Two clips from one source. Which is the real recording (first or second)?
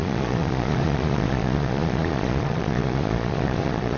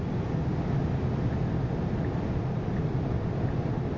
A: second